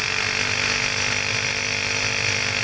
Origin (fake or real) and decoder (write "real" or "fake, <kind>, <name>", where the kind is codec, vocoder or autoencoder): real